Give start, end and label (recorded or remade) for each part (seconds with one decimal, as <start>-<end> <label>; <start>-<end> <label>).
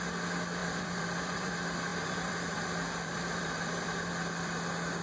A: 0.0-0.6 recorded; 0.6-1.5 remade; 1.5-1.9 recorded; 1.9-4.1 remade; 4.1-5.0 recorded